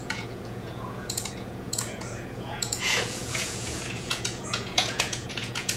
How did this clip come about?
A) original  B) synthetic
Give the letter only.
B